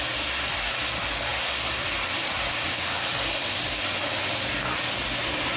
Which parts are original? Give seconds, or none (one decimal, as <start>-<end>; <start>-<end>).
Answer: 0.0-5.6